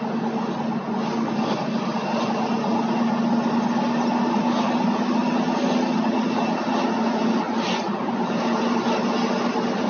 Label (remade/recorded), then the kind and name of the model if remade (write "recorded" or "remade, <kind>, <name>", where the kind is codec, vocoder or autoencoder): recorded